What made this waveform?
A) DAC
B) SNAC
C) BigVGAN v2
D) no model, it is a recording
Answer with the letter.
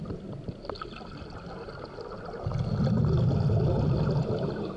D